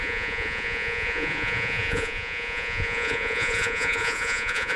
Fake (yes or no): yes